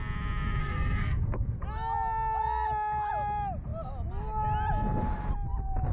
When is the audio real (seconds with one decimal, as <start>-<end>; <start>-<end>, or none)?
0.0-0.6; 1.6-5.9